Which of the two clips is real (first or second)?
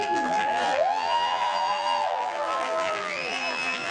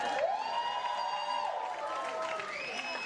second